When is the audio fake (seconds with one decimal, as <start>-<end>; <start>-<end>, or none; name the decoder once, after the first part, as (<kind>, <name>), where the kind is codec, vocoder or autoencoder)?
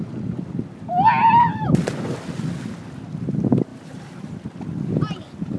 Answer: 1.2-2.1 (vocoder, BigVGAN v2)